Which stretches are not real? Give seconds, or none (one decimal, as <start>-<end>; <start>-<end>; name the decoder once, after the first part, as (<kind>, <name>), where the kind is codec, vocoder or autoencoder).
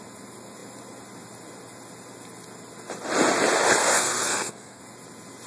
3.8-4.8 (codec, SNAC)